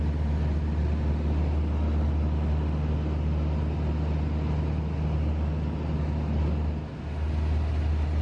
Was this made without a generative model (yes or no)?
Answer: yes